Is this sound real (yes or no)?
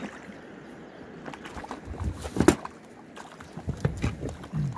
yes